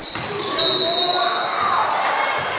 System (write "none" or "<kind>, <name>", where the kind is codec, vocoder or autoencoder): none